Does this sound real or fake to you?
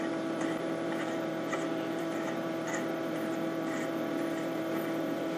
fake